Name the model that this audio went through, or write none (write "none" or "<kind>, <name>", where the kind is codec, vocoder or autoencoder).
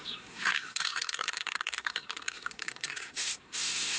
codec, SNAC